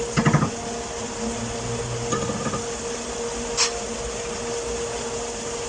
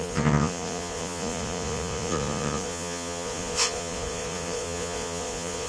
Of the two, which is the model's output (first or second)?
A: second